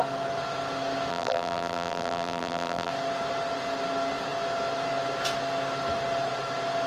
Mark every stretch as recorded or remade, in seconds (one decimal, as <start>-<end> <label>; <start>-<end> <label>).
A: 0.0-1.1 recorded; 1.1-2.9 remade; 2.9-6.9 recorded